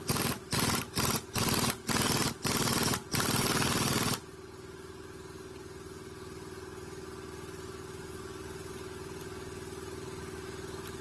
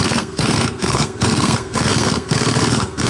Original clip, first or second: first